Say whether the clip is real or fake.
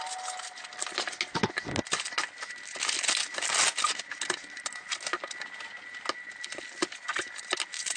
real